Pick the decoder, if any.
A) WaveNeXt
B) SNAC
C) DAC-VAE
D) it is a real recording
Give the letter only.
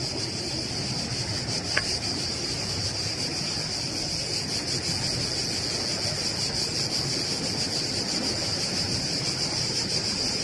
D